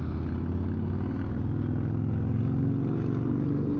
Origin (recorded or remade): recorded